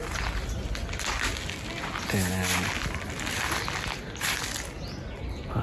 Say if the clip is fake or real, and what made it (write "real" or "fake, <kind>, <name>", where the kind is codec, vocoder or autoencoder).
real